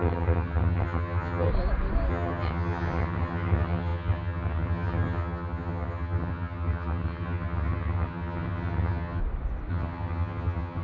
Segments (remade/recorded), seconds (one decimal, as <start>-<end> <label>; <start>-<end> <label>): 0.0-1.5 remade; 1.5-2.1 recorded; 2.1-9.2 remade; 9.2-9.7 recorded; 9.7-10.8 remade